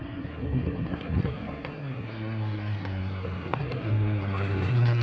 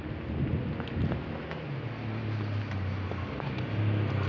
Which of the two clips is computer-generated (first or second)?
first